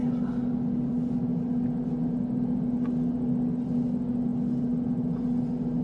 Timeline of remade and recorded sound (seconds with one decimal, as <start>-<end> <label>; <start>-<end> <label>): 0.0-5.8 recorded